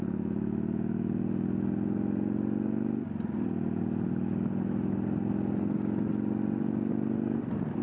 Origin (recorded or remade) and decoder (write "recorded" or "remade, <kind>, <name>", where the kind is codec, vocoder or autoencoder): recorded